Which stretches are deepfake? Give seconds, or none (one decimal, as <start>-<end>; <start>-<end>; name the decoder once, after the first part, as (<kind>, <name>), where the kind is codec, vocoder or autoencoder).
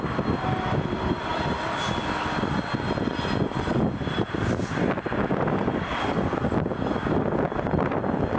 none